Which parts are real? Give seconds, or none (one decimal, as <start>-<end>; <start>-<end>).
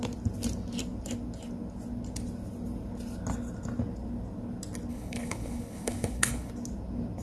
0.0-4.9; 6.5-7.2